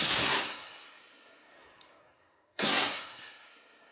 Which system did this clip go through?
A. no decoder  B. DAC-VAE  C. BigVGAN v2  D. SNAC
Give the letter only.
D